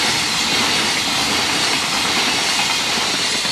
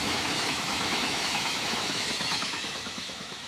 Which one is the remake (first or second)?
second